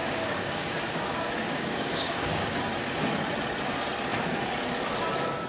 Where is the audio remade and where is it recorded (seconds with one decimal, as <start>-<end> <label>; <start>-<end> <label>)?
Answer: 0.0-2.6 remade; 2.6-5.5 recorded

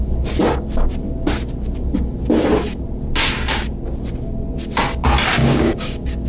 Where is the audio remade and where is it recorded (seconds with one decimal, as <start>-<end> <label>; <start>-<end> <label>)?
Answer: 0.0-5.4 recorded; 5.4-6.3 remade

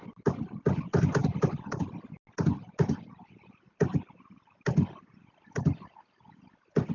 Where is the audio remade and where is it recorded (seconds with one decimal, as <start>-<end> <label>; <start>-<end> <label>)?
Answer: 0.0-6.9 recorded

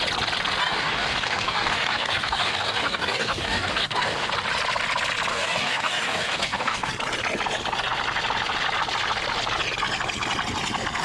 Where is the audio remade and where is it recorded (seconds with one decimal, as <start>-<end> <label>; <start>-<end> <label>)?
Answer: 0.0-0.6 recorded; 0.6-4.3 remade; 4.3-5.3 recorded; 5.3-6.9 remade; 6.9-11.0 recorded